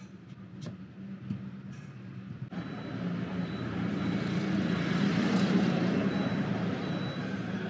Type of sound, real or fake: real